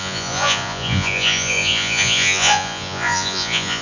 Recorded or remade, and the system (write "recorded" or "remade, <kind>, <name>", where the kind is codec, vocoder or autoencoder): remade, vocoder, Vocos